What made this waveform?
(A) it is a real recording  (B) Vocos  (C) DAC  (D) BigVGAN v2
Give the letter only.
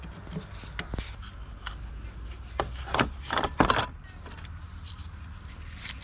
A